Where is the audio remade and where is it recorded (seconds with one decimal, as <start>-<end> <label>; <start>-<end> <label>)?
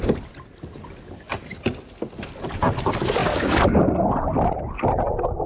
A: 0.0-5.5 recorded